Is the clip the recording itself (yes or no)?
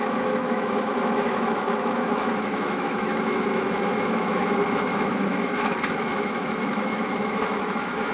no